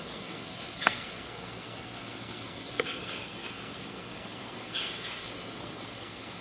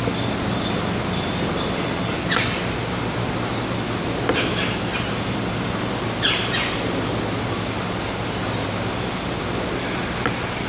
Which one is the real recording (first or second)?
second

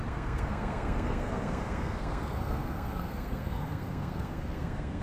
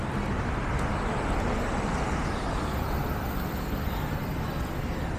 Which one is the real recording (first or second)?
second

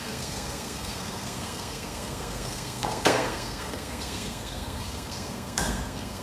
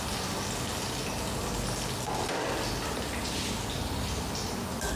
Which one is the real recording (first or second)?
second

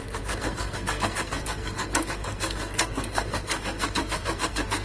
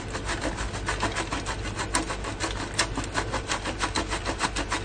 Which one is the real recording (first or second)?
second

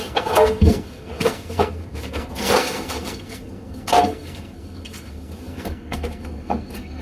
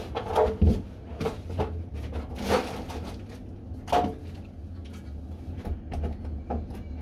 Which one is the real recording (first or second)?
second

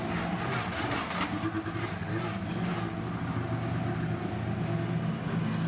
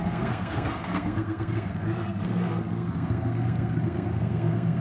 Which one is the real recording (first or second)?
first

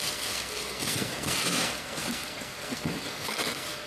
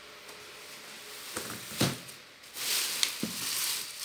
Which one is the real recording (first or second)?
second